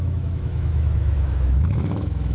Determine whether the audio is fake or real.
fake